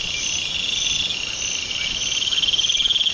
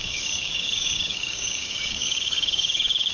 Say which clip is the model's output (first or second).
second